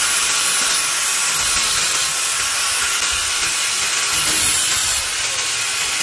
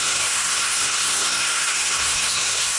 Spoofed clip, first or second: second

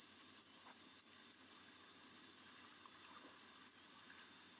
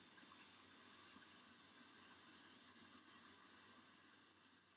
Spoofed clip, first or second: second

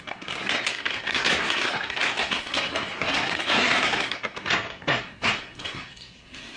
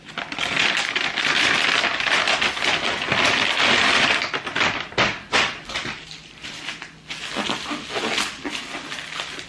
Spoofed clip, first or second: first